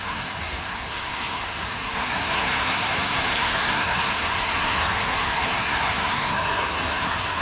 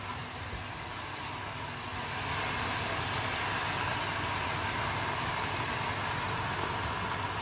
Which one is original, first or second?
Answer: second